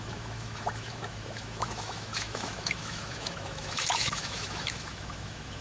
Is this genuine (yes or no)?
no